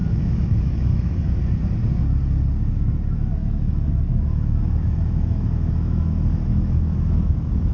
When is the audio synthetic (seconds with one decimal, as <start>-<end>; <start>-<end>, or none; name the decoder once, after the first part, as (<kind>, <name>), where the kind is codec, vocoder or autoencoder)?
0.0-1.4 (autoencoder, DAC-VAE); 3.4-7.7